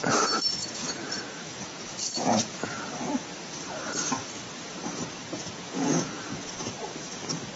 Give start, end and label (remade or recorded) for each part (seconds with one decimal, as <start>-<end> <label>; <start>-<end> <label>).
0.0-0.6 recorded; 0.6-2.8 remade; 2.8-5.3 recorded; 5.3-6.6 remade; 6.6-7.6 recorded